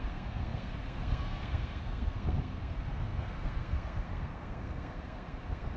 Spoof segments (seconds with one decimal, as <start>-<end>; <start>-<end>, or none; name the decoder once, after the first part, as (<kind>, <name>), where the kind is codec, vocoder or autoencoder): 0.0-5.8 (codec, SNAC)